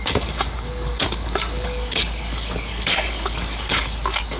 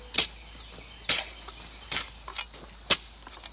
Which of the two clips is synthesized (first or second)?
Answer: first